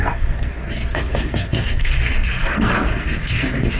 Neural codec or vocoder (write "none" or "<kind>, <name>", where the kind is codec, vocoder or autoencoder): codec, SNAC